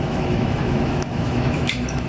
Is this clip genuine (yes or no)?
no